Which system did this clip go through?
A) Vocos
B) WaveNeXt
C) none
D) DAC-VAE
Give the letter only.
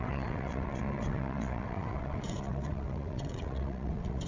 B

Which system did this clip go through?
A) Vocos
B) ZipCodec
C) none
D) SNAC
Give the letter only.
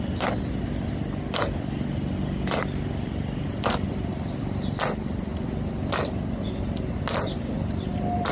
C